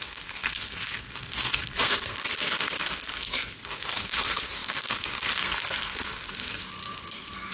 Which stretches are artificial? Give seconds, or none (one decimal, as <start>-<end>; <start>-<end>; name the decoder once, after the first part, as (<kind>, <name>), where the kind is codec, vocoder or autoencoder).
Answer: 0.0-7.5 (codec, SNAC)